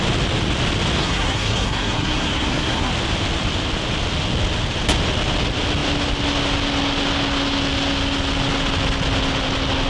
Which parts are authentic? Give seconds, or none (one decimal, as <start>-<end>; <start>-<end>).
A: 0.0-1.0; 2.9-9.9